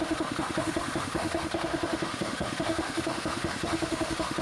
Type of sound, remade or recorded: remade